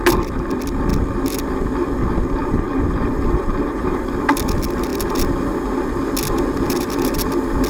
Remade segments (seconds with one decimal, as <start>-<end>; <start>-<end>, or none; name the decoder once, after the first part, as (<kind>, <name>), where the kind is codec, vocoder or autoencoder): 2.4-4.1 (vocoder, BigVGAN v2)